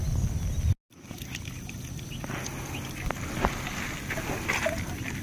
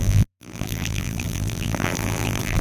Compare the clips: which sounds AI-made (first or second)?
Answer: second